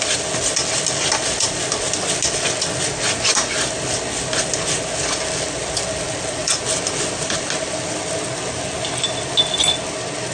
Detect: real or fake real